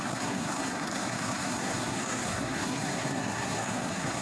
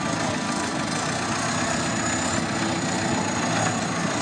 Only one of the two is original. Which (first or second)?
second